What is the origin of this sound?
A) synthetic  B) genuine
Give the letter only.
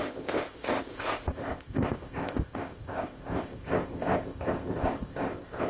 A